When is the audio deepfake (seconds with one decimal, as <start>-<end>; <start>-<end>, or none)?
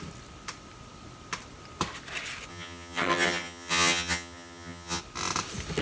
2.5-5.0